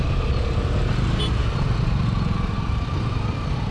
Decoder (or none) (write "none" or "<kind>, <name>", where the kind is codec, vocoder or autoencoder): vocoder, BigVGAN v2